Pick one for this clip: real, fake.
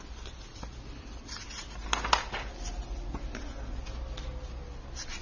real